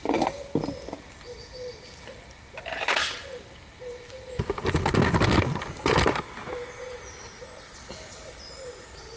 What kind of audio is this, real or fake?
real